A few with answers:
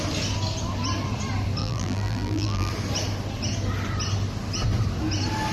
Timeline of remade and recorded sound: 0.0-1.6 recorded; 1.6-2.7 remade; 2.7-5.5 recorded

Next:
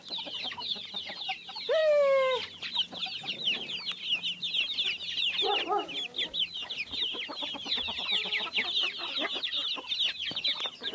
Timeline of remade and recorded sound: 0.0-1.8 remade; 1.8-6.3 recorded; 6.3-10.9 remade

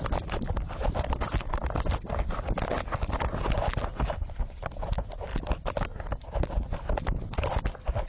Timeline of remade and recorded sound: 0.0-8.1 recorded

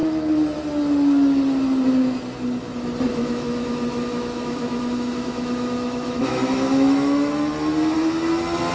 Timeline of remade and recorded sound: 0.0-3.1 recorded; 3.1-7.3 remade; 7.3-8.7 recorded

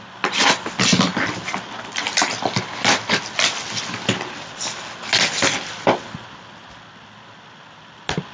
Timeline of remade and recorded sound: 0.0-1.1 recorded; 1.1-1.8 remade; 1.8-8.3 recorded